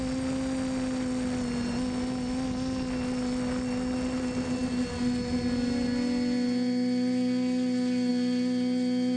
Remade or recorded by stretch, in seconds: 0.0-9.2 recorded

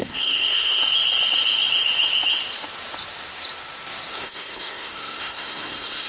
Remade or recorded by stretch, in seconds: 0.0-0.8 remade; 0.8-4.1 recorded; 4.1-6.1 remade

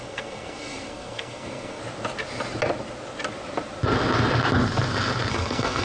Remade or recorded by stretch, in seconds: 0.0-1.8 remade; 1.8-5.3 recorded; 5.3-5.8 remade

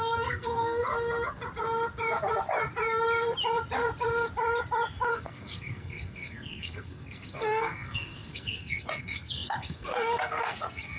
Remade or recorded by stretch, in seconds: 0.0-0.8 remade; 0.8-5.1 recorded; 5.1-11.0 remade

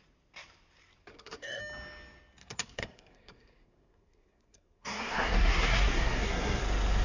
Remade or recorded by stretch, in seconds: 0.0-1.1 recorded; 1.1-1.6 remade; 1.6-2.4 recorded; 2.4-6.6 remade; 6.6-7.0 recorded

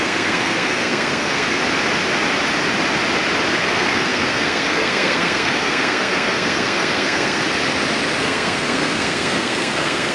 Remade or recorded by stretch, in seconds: 0.0-1.6 remade; 1.6-3.6 recorded; 3.6-7.4 remade; 7.4-8.2 recorded; 8.2-10.1 remade

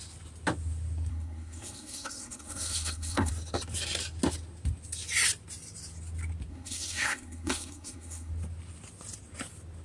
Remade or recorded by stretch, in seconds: 0.0-1.1 recorded; 1.1-3.3 remade; 3.3-6.5 recorded; 6.5-8.3 remade; 8.3-9.8 recorded